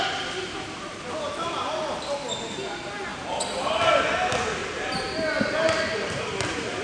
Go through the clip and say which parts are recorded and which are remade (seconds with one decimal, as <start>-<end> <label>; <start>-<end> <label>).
0.0-6.8 recorded